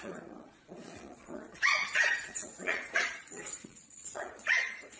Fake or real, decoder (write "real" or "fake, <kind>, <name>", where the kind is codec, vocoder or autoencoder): fake, vocoder, Vocos